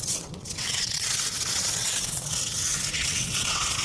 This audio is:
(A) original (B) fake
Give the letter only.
B